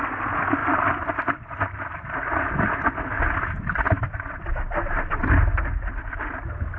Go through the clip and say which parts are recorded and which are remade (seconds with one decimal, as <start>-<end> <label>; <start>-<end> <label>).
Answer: 0.0-6.8 recorded